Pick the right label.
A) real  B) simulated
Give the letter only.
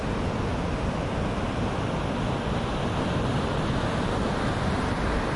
A